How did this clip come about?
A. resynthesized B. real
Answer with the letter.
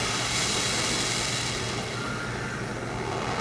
B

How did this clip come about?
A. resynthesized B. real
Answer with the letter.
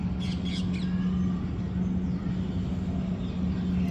B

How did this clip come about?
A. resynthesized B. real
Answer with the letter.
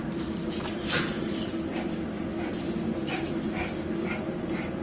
B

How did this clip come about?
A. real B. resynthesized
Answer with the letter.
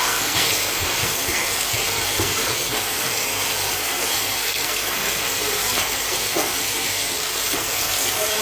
B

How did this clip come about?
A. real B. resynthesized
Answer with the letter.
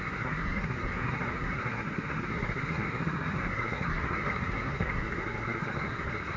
B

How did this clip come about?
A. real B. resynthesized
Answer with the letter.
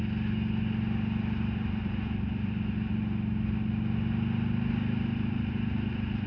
A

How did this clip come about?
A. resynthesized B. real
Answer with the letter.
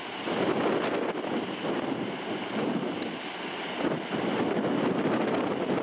B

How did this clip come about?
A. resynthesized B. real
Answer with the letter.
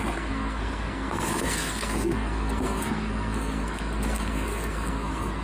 A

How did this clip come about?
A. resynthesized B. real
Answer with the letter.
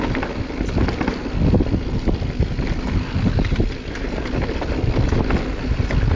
B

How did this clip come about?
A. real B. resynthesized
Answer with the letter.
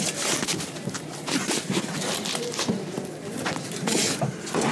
A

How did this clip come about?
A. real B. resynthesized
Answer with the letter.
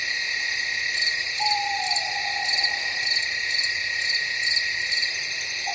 A